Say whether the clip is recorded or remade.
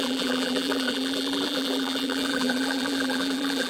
remade